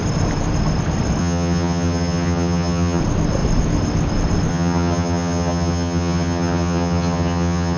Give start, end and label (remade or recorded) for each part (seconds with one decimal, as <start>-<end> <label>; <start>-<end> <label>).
0.0-1.2 recorded; 1.2-3.0 remade; 3.0-4.5 recorded; 4.5-7.8 remade